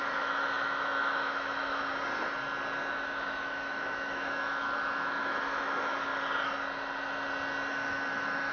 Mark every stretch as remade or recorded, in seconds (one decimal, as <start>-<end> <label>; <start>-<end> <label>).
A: 0.0-1.9 remade; 1.9-2.9 recorded; 2.9-6.1 remade; 6.1-7.7 recorded; 7.7-8.5 remade